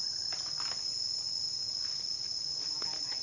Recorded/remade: recorded